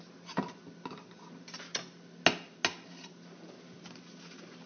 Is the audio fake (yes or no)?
no